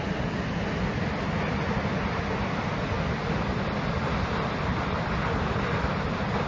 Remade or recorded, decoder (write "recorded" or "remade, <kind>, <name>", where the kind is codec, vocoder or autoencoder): recorded